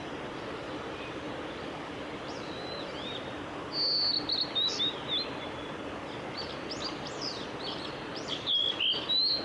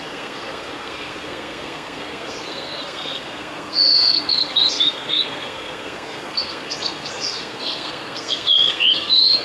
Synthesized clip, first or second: second